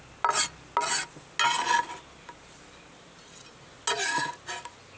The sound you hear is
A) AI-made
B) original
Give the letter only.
B